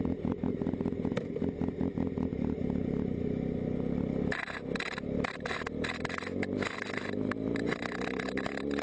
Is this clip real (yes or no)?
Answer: yes